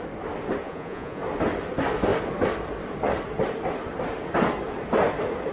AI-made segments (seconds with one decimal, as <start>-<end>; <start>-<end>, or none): 0.6-1.2